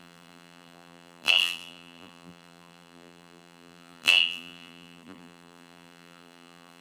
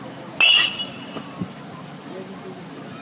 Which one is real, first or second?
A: second